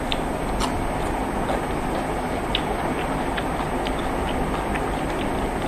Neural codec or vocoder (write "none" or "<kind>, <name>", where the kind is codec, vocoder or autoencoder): none